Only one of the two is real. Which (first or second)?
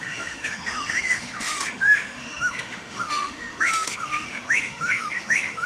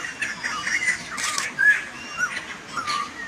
second